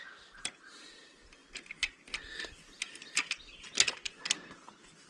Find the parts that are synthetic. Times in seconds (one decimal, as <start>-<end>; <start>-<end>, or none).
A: 0.0-1.4; 4.5-5.1